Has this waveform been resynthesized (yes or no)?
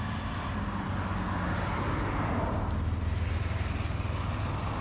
no